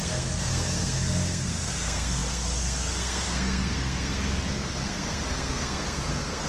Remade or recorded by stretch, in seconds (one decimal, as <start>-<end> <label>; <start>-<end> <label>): 0.0-6.5 remade